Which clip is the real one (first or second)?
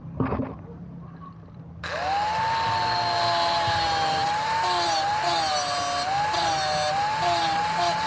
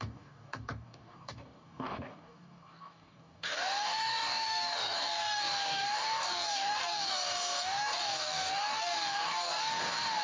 first